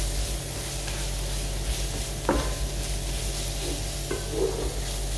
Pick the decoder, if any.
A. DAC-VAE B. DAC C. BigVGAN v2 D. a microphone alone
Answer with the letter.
D